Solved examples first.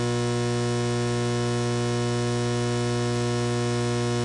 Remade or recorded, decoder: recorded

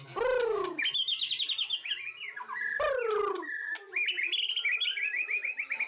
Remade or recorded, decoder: recorded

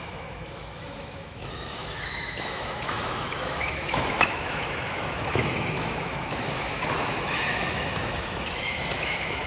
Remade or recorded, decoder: remade, autoencoder, DAC-VAE